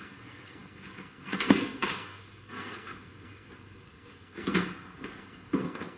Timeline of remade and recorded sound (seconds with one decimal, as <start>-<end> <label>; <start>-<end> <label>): 0.0-6.0 remade